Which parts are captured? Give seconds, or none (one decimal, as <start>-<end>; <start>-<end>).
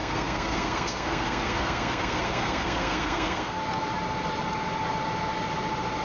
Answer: 3.6-6.0